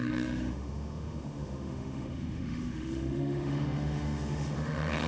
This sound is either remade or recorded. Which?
remade